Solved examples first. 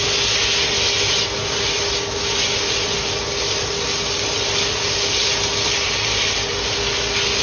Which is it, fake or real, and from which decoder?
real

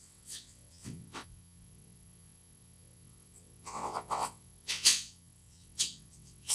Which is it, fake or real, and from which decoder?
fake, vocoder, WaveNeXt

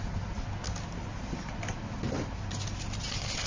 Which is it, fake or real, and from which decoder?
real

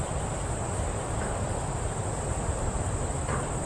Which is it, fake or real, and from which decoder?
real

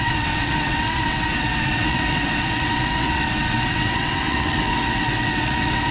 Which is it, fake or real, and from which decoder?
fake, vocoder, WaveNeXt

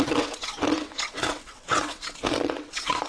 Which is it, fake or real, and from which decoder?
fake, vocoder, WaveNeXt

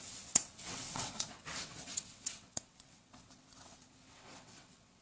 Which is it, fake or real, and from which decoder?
fake, vocoder, WaveNeXt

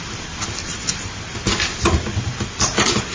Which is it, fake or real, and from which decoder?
real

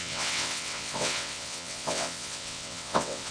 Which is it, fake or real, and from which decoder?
fake, vocoder, WaveNeXt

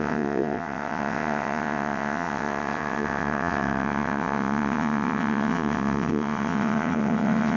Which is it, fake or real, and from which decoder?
fake, vocoder, WaveNeXt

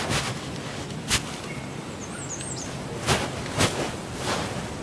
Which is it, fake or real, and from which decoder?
real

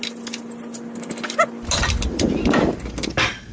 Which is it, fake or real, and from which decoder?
real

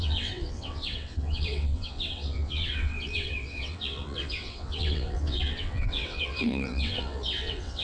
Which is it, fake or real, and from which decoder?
fake, vocoder, WaveNeXt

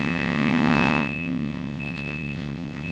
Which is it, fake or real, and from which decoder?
fake, vocoder, WaveNeXt